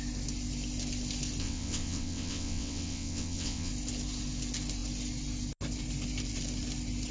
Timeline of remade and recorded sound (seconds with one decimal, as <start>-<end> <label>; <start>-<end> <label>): 0.0-1.4 recorded; 1.4-3.7 remade; 3.7-7.1 recorded